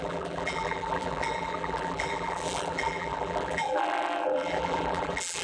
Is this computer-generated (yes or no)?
yes